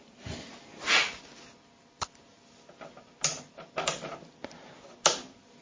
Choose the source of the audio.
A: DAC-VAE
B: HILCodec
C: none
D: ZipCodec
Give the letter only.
C